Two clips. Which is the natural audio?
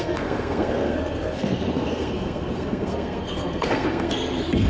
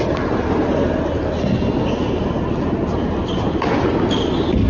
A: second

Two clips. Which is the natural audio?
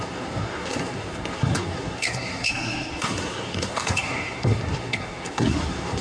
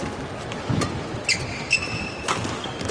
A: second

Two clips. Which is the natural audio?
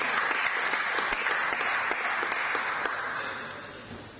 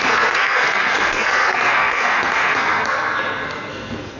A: first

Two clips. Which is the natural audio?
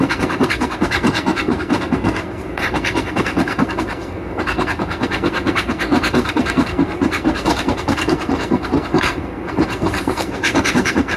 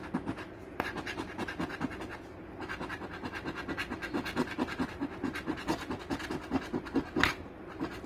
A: second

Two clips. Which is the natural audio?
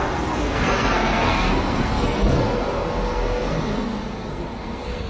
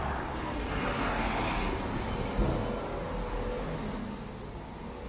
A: second